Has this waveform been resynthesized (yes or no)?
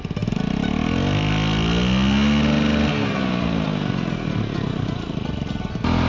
no